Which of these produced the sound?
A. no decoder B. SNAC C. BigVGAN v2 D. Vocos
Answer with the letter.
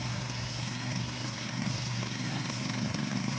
B